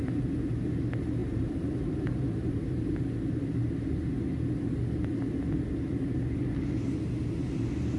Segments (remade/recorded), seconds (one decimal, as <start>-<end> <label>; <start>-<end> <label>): 0.0-1.2 recorded; 1.2-2.9 remade; 2.9-8.0 recorded